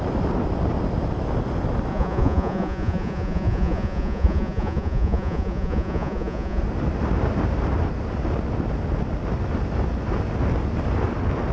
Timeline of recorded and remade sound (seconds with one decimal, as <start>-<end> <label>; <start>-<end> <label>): 0.0-1.9 recorded; 1.9-6.6 remade; 6.6-11.5 recorded